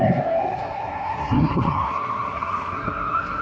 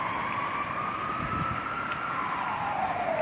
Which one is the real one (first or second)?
second